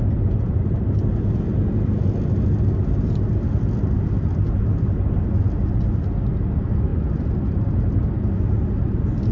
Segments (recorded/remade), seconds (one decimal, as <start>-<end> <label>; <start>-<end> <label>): 0.0-9.3 recorded